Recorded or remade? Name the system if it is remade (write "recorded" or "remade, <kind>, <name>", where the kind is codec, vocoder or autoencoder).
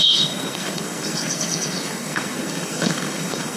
remade, codec, SNAC